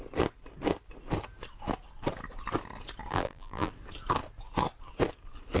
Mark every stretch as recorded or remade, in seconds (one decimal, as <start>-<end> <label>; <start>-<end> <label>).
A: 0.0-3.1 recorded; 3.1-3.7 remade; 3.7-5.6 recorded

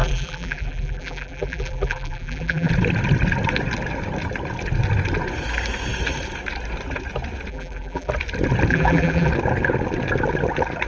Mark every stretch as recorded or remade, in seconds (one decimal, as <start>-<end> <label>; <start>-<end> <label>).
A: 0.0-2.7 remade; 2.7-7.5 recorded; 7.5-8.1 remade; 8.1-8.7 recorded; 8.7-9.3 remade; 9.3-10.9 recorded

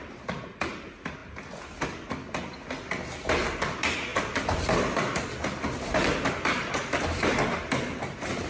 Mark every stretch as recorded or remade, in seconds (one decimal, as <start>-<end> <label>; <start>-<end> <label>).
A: 0.0-4.1 recorded; 4.1-5.2 remade; 5.2-8.5 recorded

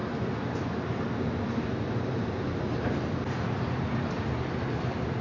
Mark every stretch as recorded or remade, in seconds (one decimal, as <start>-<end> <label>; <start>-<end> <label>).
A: 0.0-5.2 recorded

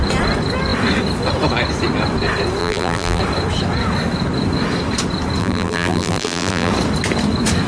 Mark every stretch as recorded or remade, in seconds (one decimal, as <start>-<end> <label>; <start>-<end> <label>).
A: 0.0-2.6 recorded; 2.6-3.2 remade; 3.2-5.4 recorded; 5.4-6.7 remade; 6.7-7.7 recorded

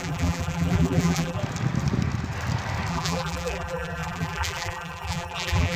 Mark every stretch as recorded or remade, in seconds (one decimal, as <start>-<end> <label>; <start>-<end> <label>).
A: 0.0-1.4 remade; 1.4-2.9 recorded; 2.9-5.8 remade

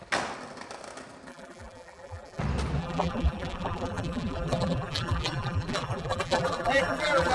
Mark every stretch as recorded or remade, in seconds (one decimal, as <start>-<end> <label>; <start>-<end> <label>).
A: 0.0-1.3 recorded; 1.3-2.4 remade; 2.4-2.8 recorded; 2.8-7.3 remade